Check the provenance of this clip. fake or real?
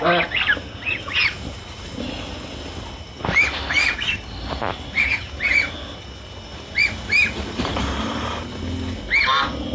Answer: real